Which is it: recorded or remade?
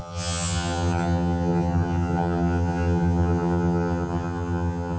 remade